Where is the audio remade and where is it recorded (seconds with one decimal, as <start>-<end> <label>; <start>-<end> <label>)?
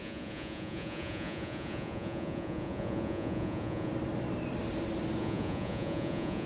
0.0-3.9 remade; 3.9-5.2 recorded; 5.2-6.5 remade